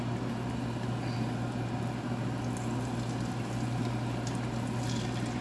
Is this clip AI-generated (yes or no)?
no